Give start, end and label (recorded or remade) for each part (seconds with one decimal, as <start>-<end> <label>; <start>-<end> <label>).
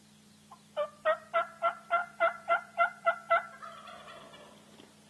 0.0-2.0 recorded; 2.0-3.1 remade; 3.1-5.1 recorded